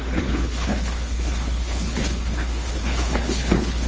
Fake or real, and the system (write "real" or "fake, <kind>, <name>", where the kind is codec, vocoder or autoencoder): fake, codec, HILCodec